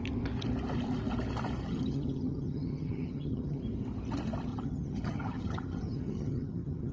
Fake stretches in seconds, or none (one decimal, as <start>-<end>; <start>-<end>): 1.6-3.6; 4.5-6.9